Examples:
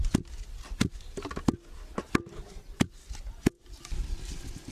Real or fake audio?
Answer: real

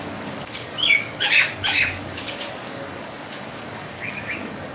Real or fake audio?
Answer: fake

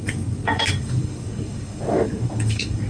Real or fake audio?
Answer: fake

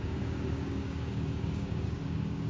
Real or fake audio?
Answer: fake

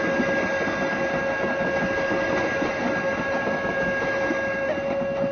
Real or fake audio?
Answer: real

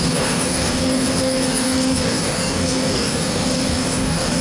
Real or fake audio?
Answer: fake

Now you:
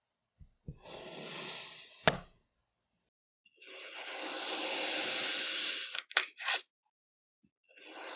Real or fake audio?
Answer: real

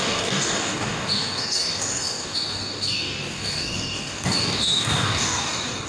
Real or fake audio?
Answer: fake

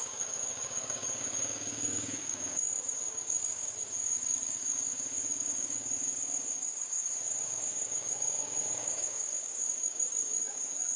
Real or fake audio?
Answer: fake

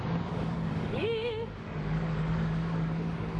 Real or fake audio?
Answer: fake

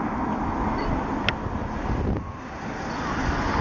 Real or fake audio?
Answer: real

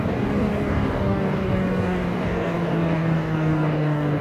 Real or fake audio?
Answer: fake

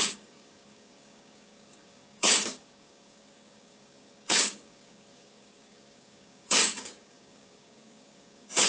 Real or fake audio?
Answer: fake